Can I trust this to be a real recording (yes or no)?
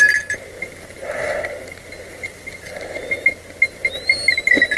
yes